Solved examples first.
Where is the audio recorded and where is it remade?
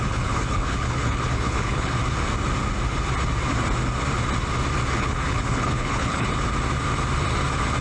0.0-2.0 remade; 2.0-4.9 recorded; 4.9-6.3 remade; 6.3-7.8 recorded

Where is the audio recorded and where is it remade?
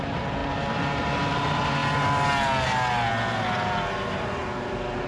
0.0-5.1 recorded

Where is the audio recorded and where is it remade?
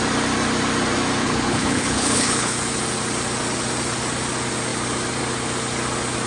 0.0-1.2 recorded; 1.2-2.6 remade; 2.6-6.3 recorded